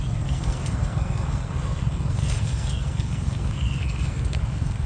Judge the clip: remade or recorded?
remade